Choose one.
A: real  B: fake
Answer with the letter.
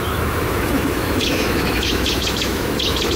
B